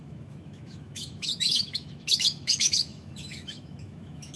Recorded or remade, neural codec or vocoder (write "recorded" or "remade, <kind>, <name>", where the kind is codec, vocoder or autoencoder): remade, autoencoder, DAC-VAE